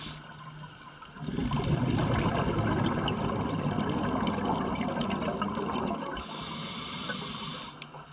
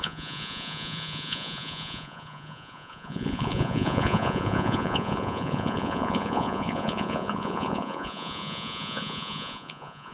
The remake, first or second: second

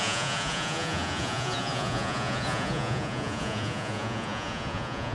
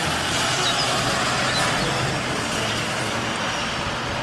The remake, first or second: first